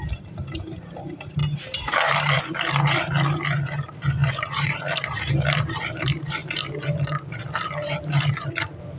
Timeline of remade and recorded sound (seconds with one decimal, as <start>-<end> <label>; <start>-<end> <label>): 0.0-9.0 remade